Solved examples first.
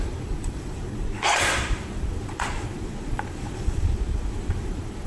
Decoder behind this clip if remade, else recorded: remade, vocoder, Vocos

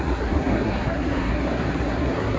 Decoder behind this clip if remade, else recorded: remade, codec, SNAC